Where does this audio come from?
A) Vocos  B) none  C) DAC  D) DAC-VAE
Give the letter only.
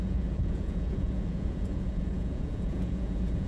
A